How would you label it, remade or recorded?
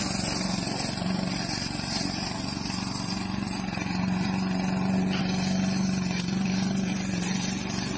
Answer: remade